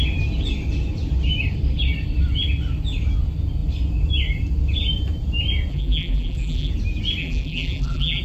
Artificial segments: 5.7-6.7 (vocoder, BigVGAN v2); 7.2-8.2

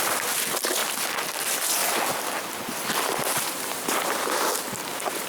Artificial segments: 0.0-0.8 (vocoder, BigVGAN v2); 1.4-1.8

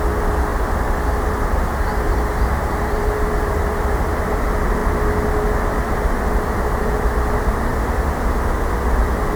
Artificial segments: 0.5-4.0 (vocoder, BigVGAN v2)